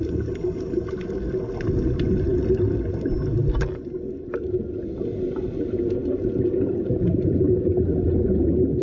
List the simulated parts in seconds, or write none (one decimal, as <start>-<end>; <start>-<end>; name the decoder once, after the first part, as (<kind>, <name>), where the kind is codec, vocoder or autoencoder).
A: none